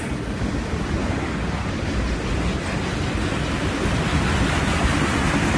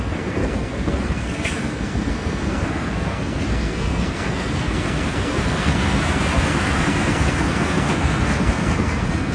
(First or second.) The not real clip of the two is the second